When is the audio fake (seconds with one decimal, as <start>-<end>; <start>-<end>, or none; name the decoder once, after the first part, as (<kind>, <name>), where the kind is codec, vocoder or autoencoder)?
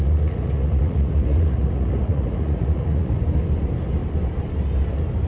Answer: 0.0-3.2 (vocoder, Vocos)